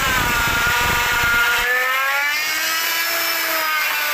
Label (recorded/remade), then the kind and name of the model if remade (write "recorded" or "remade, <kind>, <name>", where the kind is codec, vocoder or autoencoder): remade, vocoder, BigVGAN v2